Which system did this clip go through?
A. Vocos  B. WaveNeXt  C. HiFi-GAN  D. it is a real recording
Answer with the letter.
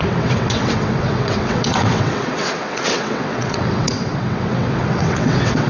B